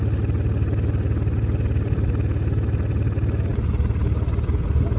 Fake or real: real